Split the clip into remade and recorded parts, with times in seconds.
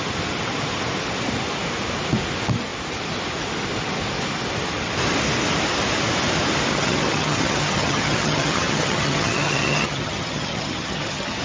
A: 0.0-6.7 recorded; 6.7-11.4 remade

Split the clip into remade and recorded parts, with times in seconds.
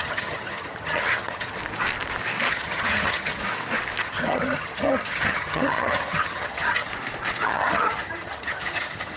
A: 0.0-1.6 remade; 1.6-2.5 recorded; 2.5-3.4 remade; 3.4-4.0 recorded; 4.0-6.9 remade; 6.9-7.4 recorded; 7.4-9.2 remade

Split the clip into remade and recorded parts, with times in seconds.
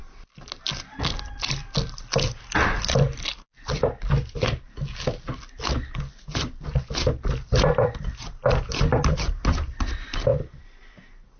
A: 0.0-11.4 recorded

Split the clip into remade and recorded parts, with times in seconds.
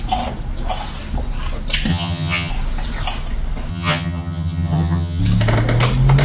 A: 0.0-1.9 recorded; 1.9-2.5 remade; 2.5-3.7 recorded; 3.7-5.2 remade; 5.2-6.2 recorded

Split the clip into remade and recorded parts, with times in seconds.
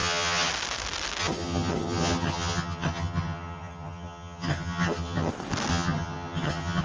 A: 0.0-0.5 remade; 0.5-1.2 recorded; 1.2-5.3 remade; 5.3-5.7 recorded; 5.7-6.8 remade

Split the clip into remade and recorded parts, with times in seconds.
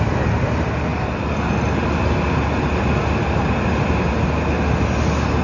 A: 0.0-5.4 recorded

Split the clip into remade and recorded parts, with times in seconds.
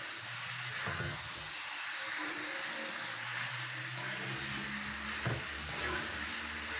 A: 0.0-0.9 recorded; 0.9-1.5 remade; 1.5-6.8 recorded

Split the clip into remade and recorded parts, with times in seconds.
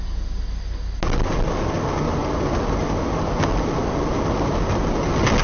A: 0.0-5.4 recorded